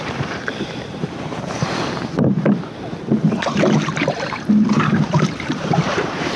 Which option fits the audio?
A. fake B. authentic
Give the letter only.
A